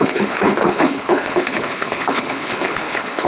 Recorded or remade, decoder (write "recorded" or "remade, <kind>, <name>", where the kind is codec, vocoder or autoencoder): remade, codec, HILCodec